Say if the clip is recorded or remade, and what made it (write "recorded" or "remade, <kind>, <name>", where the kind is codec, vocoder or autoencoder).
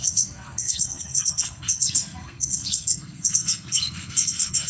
remade, codec, SNAC